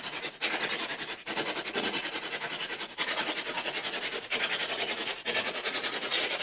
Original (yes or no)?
no